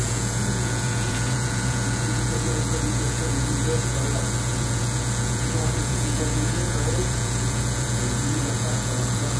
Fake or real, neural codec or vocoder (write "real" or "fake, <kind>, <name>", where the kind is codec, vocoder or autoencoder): fake, vocoder, Vocos